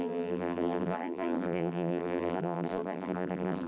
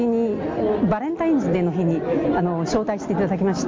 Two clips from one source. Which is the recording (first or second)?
second